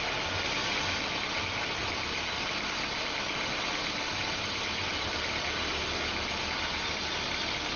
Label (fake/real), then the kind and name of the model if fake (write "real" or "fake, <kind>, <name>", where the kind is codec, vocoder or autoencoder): real